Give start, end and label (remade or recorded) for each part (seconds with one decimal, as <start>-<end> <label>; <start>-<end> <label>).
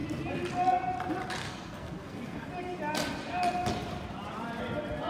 0.0-1.4 recorded; 1.4-2.5 remade; 2.5-5.1 recorded